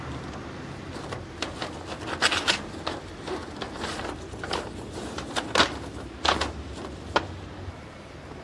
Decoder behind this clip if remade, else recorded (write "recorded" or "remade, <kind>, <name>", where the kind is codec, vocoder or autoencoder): recorded